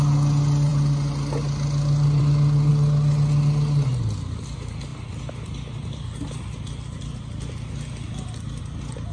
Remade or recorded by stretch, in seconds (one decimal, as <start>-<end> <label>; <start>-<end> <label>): 0.0-9.1 recorded